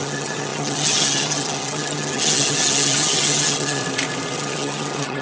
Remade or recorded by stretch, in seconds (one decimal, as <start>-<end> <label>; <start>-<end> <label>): 0.0-3.8 remade; 3.8-4.4 recorded; 4.4-5.2 remade